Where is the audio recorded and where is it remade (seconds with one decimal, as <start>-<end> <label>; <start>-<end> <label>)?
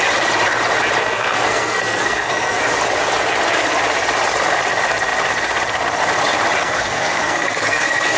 0.0-1.0 recorded; 1.0-2.6 remade; 2.6-6.6 recorded; 6.6-8.2 remade